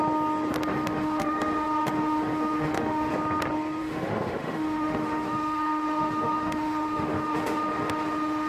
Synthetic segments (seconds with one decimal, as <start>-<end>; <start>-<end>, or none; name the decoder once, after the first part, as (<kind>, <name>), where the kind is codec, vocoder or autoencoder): 0.7-3.1 (autoencoder, DAC-VAE); 3.8-8.5